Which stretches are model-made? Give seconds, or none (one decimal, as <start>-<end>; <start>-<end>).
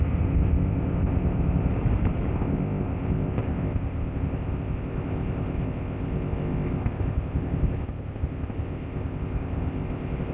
0.0-1.7; 2.3-10.3